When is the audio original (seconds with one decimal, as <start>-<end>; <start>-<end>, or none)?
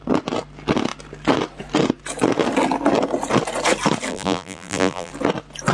0.0-4.1; 5.1-5.7